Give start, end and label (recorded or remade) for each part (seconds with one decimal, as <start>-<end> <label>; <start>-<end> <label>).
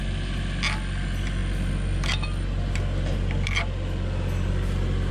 0.0-5.1 recorded